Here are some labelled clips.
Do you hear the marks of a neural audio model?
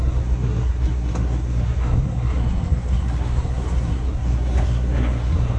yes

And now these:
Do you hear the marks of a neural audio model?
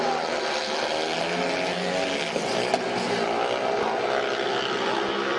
no